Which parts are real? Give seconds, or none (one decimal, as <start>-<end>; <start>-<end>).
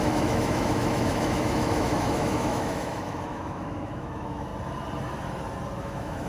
4.5-5.8